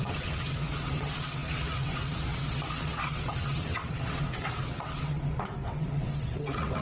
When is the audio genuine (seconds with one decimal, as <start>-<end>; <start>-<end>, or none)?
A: none